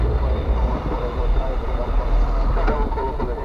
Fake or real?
fake